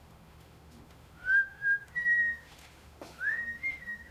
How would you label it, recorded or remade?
remade